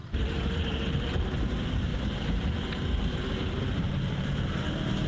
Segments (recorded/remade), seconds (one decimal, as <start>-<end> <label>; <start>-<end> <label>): 0.0-1.2 remade; 1.2-1.9 recorded; 1.9-5.1 remade

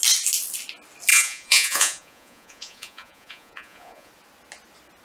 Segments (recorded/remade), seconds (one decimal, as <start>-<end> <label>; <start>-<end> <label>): 0.0-1.1 recorded; 1.1-4.1 remade; 4.1-5.0 recorded

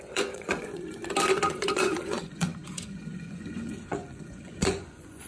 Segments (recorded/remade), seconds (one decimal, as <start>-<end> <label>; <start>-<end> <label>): 0.0-1.0 remade; 1.0-1.5 recorded; 1.5-5.3 remade

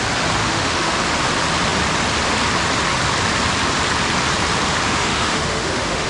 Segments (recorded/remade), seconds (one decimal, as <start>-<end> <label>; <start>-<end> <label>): 0.0-0.4 recorded; 0.4-1.0 remade; 1.0-4.9 recorded; 4.9-6.1 remade

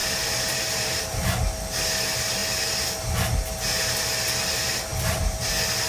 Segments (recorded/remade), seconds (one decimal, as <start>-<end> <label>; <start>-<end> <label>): 0.0-1.2 remade; 1.2-4.9 recorded; 4.9-5.5 remade; 5.5-5.9 recorded

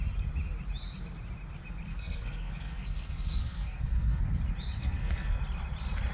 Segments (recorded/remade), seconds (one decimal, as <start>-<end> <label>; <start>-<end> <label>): 0.0-1.9 recorded; 1.9-4.2 remade; 4.2-4.8 recorded; 4.8-5.4 remade; 5.4-6.1 recorded

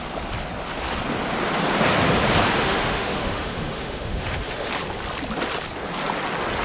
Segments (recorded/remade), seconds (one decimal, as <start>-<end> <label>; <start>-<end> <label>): 0.0-2.6 recorded; 2.6-4.7 remade; 4.7-6.6 recorded